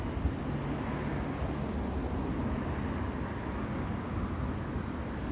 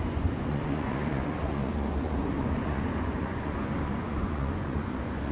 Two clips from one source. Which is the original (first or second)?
first